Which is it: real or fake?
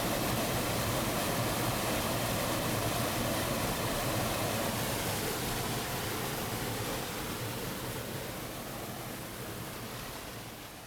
real